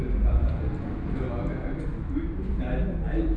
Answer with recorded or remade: recorded